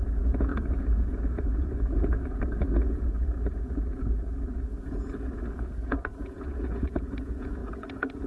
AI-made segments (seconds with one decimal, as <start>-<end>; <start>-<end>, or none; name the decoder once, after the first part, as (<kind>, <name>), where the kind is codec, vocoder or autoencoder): 0.0-8.3 (vocoder, Vocos)